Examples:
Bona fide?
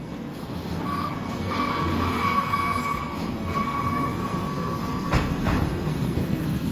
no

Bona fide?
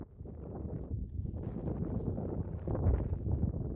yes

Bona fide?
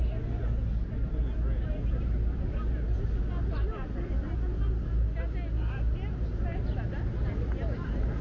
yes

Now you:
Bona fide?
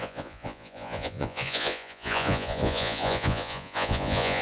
no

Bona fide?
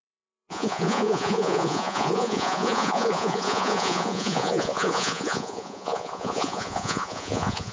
no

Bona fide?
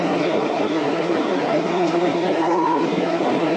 no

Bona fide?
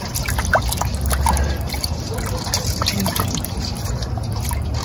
yes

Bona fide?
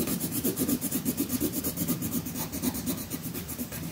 no